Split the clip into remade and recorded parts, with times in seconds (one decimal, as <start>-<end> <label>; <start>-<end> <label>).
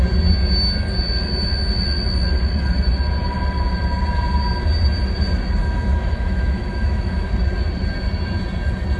0.0-5.6 recorded; 5.6-7.3 remade; 7.3-9.0 recorded